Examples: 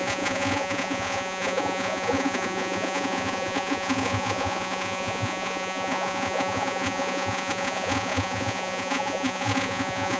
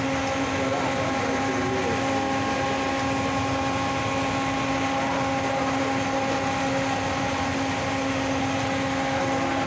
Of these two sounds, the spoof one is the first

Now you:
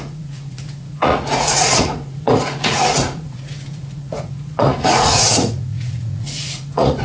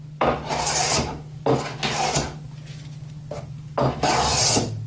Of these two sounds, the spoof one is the first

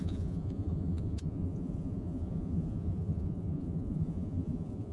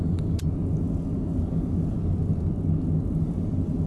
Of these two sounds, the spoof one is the first